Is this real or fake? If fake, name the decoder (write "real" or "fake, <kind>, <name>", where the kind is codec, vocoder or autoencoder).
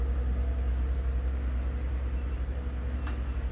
real